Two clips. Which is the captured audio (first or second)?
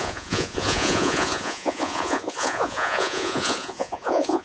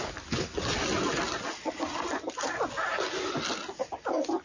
second